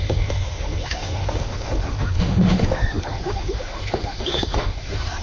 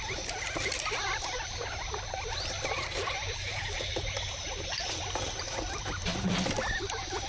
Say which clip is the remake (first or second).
first